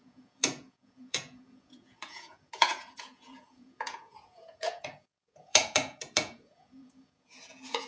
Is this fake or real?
fake